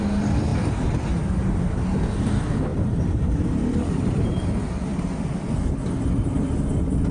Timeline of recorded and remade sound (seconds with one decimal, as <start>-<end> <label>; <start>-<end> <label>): 0.0-0.5 recorded; 0.5-1.6 remade; 1.6-2.7 recorded; 2.7-4.4 remade; 4.4-7.1 recorded